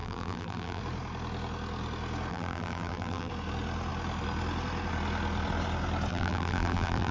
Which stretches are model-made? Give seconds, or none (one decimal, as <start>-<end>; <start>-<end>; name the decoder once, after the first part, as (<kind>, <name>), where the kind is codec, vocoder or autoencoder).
0.0-0.8 (vocoder, BigVGAN v2); 2.3-3.3; 6.1-7.1